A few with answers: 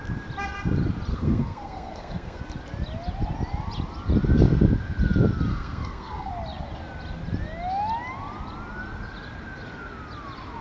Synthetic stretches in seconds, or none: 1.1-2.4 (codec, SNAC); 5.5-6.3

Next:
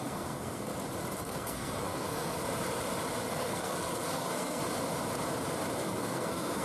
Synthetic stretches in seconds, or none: 0.0-0.7 (codec, SNAC); 1.2-2.4; 3.3-4.6; 5.8-6.6

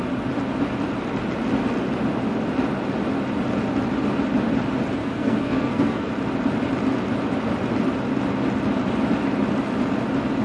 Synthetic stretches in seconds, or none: 5.0-6.1 (codec, SNAC)

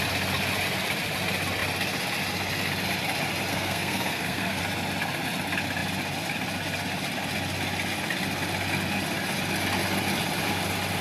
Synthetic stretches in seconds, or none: 3.5-4.6 (codec, SNAC)

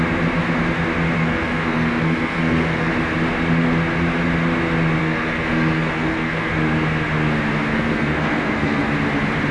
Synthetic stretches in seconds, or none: 1.2-2.9 (codec, SNAC); 5.0-6.5; 7.7-8.9

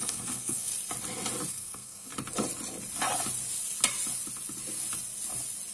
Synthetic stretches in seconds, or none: 0.0-0.7 (codec, SNAC); 1.5-2.1

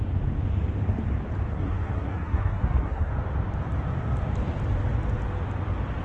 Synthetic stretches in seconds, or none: 1.5-3.1 (codec, SNAC)